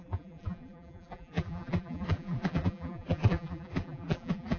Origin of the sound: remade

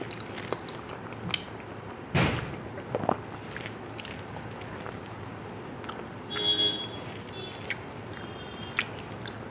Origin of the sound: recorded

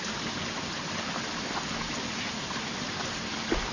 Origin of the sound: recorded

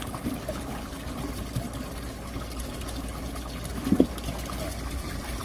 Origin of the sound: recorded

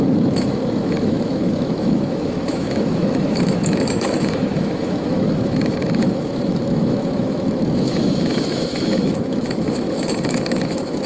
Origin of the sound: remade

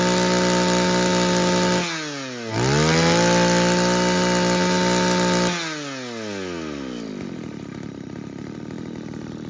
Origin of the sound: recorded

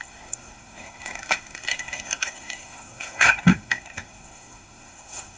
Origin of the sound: remade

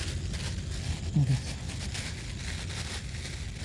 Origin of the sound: recorded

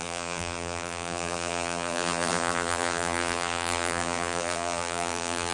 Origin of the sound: remade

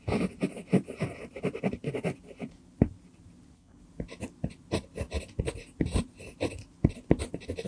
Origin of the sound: recorded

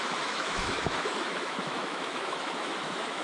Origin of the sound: remade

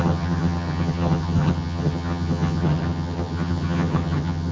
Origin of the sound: remade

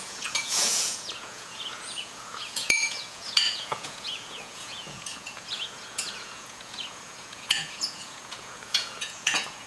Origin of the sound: remade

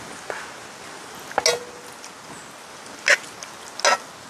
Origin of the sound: recorded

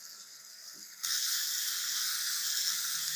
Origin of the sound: remade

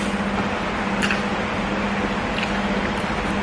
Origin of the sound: recorded